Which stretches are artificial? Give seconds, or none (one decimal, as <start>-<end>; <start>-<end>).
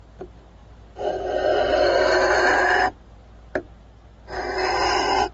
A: 0.6-1.1